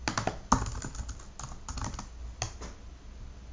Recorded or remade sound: recorded